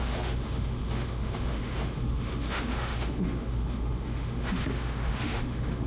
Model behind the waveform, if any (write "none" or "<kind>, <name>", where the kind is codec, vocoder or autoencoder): autoencoder, DAC-VAE